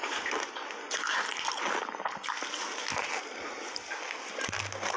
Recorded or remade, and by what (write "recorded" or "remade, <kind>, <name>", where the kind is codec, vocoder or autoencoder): recorded